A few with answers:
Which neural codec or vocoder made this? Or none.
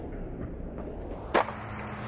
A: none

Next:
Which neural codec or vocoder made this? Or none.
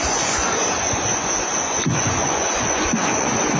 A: vocoder, Vocos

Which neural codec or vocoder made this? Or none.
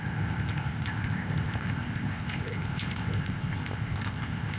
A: codec, ZipCodec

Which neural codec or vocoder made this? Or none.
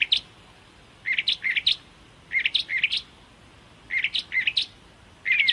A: none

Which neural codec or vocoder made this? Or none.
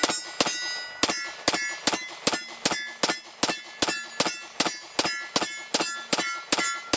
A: none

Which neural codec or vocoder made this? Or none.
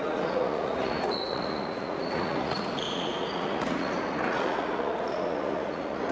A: vocoder, Vocos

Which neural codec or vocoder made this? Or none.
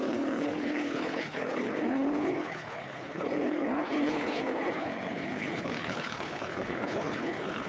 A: codec, HILCodec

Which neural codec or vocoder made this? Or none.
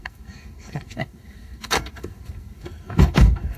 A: codec, SNAC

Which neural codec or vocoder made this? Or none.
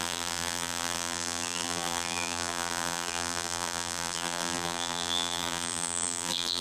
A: vocoder, BigVGAN v2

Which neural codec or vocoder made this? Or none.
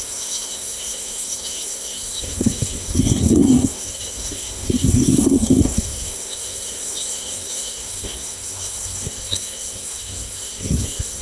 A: codec, SNAC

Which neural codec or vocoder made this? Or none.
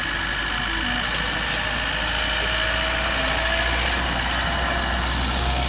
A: none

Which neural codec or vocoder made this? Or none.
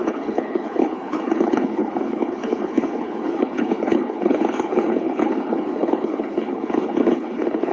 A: codec, HILCodec